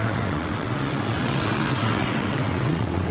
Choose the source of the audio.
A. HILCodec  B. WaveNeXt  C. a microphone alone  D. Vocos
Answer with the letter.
B